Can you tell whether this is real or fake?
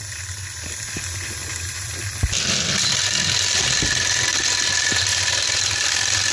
real